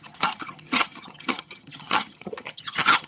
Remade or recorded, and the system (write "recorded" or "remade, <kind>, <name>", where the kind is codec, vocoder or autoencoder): remade, vocoder, HiFi-GAN